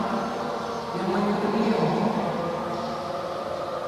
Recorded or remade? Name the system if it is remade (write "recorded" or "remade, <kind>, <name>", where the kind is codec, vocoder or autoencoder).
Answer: recorded